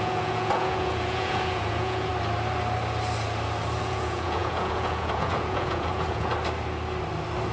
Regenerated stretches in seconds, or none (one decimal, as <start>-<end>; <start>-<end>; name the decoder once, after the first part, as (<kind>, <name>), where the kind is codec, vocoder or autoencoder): 0.0-2.1 (vocoder, Vocos); 3.8-6.3